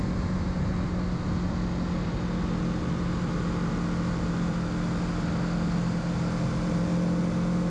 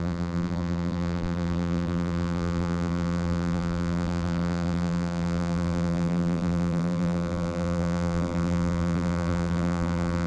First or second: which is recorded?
first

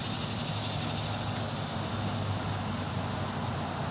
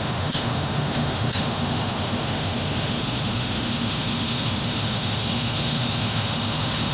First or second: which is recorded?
first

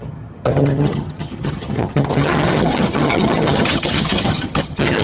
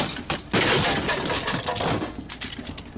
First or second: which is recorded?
second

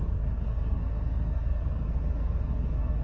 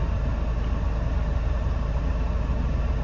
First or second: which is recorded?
second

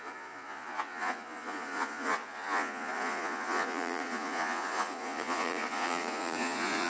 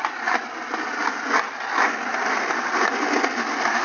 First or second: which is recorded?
second